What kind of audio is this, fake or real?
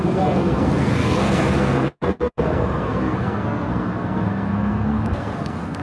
fake